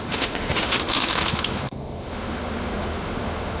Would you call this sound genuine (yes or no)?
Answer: no